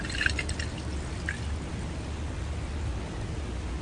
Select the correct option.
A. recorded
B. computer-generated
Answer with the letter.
A